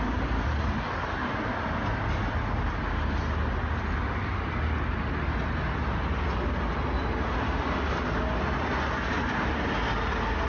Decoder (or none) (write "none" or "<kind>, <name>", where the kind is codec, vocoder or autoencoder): none